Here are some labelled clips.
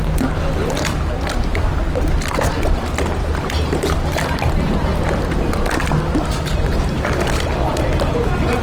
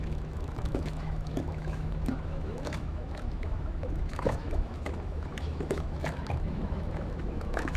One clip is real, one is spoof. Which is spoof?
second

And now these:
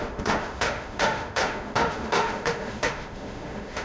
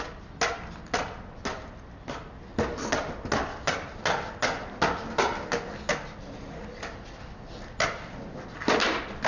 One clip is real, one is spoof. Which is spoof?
first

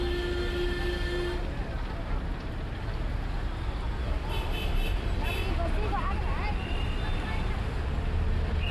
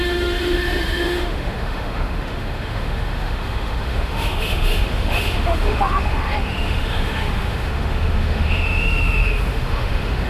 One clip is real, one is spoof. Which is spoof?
second